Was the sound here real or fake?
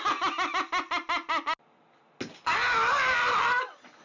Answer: real